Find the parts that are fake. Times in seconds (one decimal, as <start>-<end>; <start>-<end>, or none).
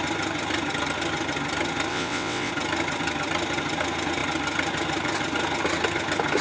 1.9-2.5